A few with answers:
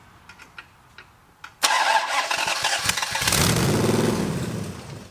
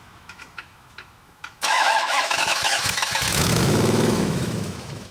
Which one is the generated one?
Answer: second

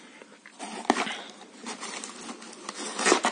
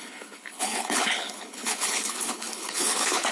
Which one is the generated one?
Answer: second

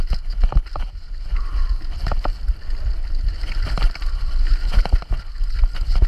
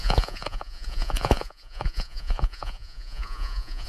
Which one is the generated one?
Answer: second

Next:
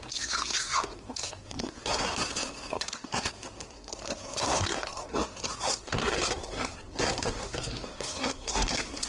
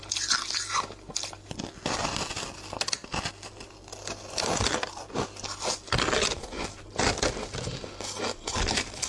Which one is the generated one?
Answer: first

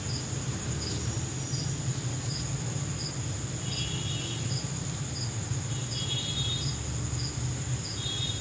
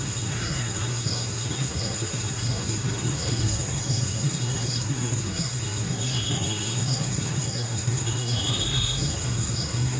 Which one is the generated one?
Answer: second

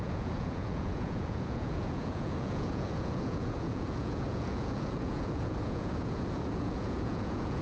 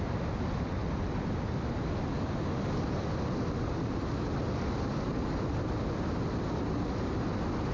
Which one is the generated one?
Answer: first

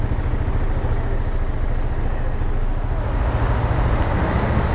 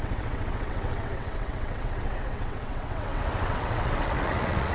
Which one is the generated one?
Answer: second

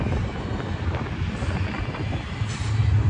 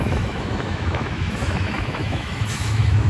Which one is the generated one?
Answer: second